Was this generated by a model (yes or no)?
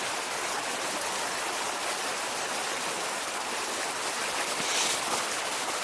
no